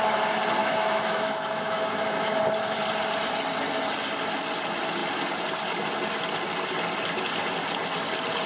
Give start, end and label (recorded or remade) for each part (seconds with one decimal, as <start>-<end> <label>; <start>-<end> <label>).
0.0-0.6 recorded; 0.6-2.4 remade; 2.4-8.5 recorded